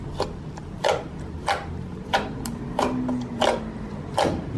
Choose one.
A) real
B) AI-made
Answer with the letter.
B